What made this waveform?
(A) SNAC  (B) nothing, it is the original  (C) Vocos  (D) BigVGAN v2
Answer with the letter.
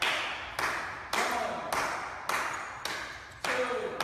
B